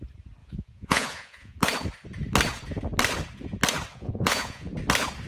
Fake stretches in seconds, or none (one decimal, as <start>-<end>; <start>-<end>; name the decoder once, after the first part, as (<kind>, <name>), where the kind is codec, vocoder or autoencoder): 0.4-1.6 (vocoder, Vocos); 3.9-4.7